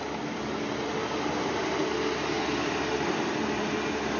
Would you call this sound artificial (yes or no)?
no